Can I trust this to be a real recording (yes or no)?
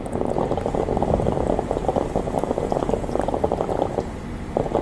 yes